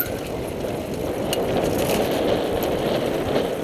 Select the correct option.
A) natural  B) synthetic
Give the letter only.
A